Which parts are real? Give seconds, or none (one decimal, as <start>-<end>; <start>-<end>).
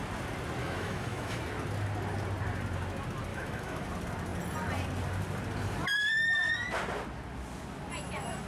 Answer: 0.0-0.6; 1.4-3.3; 3.9-8.5